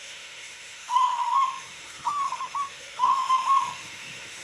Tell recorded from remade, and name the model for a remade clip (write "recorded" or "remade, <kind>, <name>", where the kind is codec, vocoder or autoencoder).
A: remade, autoencoder, DAC-VAE